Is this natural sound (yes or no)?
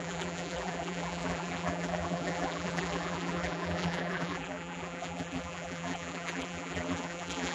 no